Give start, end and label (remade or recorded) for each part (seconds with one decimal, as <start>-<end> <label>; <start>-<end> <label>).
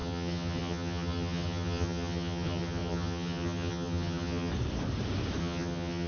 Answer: 0.0-4.5 remade; 4.5-5.4 recorded; 5.4-6.1 remade